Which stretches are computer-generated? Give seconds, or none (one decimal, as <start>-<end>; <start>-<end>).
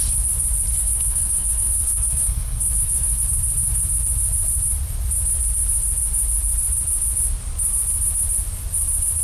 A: 0.7-3.2